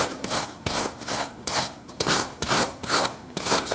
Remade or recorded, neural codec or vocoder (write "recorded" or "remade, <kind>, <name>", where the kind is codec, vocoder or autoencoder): remade, codec, SNAC